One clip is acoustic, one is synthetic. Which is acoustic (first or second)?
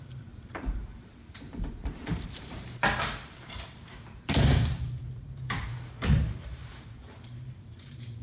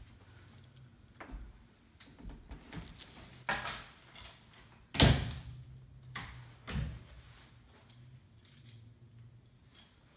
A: second